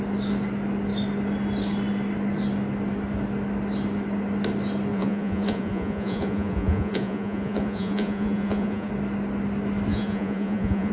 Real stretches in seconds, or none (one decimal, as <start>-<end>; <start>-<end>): 0.0-4.9; 8.9-9.9